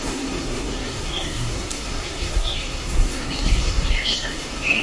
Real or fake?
fake